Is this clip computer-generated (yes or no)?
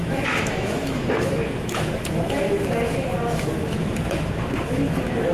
yes